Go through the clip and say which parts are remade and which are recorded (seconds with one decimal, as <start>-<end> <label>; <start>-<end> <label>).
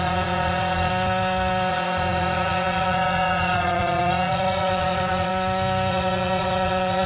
0.0-0.9 remade; 0.9-1.7 recorded; 1.7-5.3 remade; 5.3-5.9 recorded; 5.9-7.1 remade